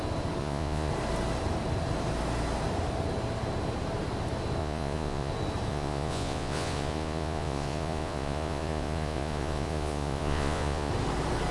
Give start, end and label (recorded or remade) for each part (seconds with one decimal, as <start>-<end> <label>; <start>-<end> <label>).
0.0-0.4 recorded; 0.4-0.9 remade; 0.9-4.6 recorded; 4.6-5.3 remade; 5.3-5.7 recorded; 5.7-10.9 remade; 10.9-11.5 recorded